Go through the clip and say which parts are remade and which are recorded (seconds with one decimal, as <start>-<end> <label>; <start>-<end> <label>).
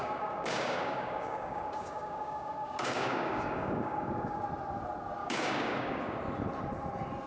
0.0-4.4 remade; 4.4-5.2 recorded; 5.2-6.2 remade; 6.2-7.3 recorded